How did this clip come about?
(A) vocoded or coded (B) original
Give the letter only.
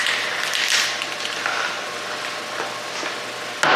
B